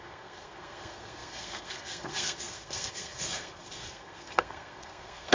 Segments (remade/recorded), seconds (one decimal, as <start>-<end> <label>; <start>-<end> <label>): 0.0-5.3 remade